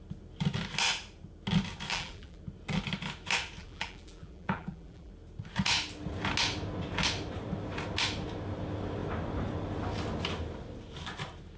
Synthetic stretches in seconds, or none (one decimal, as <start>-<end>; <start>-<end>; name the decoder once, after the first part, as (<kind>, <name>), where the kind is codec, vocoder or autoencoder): 1.9-2.4 (vocoder, BigVGAN v2); 3.6-5.1